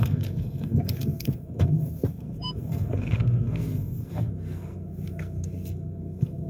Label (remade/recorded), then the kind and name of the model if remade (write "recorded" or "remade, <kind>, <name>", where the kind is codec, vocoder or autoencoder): remade, codec, SNAC